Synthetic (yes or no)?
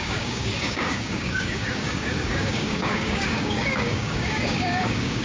yes